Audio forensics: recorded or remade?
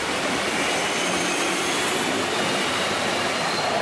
remade